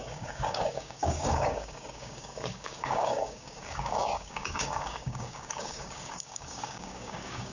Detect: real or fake fake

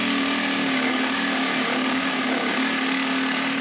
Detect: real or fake fake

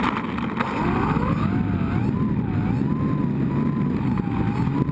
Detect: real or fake real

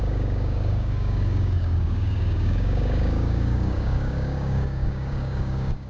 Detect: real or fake fake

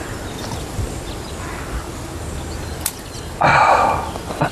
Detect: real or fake real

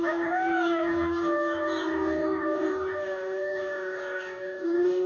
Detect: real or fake fake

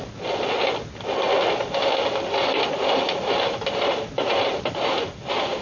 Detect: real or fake real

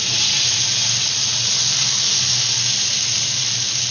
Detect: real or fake real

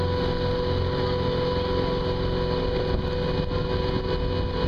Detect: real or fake real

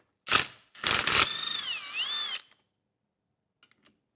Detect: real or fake real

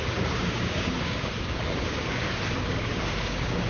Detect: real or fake fake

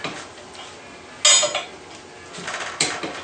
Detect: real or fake real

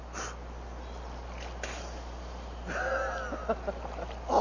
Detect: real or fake real